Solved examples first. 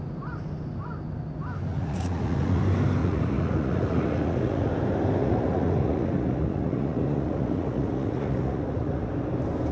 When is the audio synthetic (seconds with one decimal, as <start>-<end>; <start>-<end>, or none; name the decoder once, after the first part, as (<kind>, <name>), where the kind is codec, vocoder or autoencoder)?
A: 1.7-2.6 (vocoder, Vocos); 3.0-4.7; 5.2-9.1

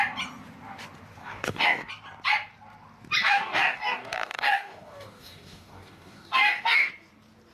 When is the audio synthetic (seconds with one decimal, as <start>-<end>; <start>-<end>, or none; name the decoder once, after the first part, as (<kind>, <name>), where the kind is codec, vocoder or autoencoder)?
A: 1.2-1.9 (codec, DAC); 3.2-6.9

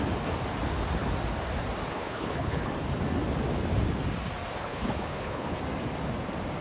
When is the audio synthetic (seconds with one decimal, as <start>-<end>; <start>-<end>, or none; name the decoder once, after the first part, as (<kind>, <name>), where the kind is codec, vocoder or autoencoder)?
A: 1.9-2.7 (codec, HILCodec); 4.6-5.6